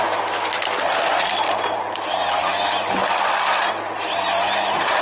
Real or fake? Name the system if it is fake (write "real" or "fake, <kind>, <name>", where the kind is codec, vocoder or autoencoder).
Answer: real